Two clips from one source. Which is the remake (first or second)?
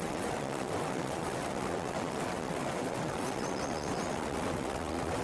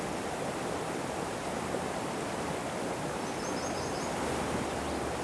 first